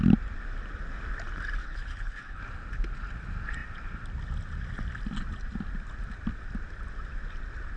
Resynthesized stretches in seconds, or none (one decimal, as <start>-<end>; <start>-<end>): 1.6-2.4